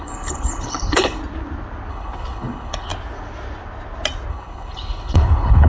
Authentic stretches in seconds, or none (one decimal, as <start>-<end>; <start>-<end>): 1.2-1.9; 2.9-4.3